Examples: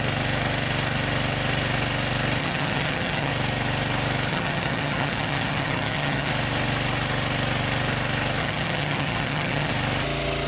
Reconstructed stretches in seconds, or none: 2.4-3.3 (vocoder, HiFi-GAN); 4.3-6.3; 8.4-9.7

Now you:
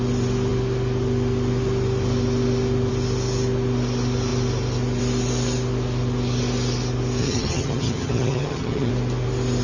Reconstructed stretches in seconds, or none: 7.2-8.9 (vocoder, HiFi-GAN)